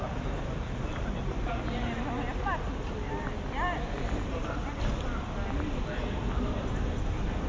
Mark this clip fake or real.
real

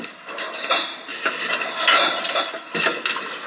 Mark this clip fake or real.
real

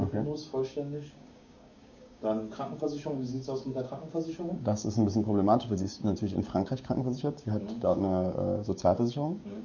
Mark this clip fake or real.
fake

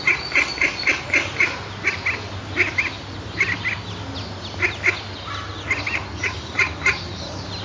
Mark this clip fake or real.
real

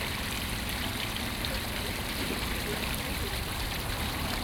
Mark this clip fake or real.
fake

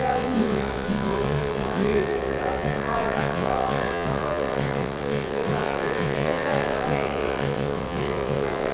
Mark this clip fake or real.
fake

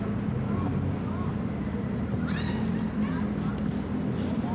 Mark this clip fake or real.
real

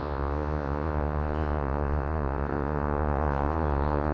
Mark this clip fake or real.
fake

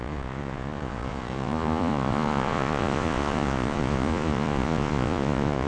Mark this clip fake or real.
fake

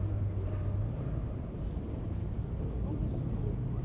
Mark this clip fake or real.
real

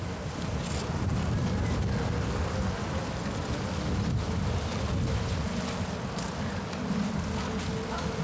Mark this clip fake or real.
real